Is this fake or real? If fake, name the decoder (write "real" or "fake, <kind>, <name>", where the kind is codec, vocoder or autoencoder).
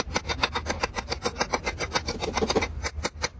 fake, vocoder, BigVGAN v2